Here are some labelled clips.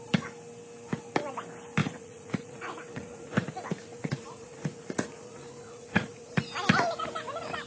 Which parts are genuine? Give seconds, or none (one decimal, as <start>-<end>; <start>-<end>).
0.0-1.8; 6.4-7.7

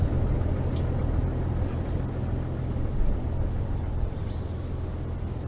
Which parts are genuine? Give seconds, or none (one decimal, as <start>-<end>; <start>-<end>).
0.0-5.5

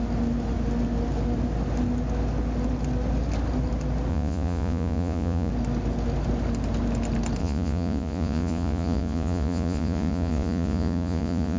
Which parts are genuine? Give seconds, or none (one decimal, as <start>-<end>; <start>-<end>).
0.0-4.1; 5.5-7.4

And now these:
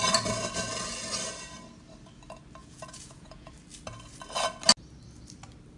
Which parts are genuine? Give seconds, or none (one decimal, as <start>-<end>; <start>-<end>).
0.0-2.6; 3.5-5.8